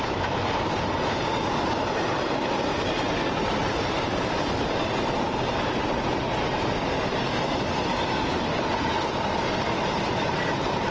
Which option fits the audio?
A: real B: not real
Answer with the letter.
A